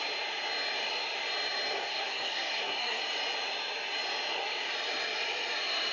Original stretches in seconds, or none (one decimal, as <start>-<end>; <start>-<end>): 0.0-1.9; 3.0-5.9